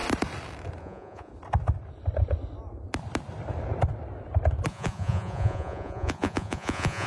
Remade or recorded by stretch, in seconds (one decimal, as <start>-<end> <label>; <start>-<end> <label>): 0.0-0.8 recorded; 0.8-1.3 remade; 1.3-4.7 recorded; 4.7-7.1 remade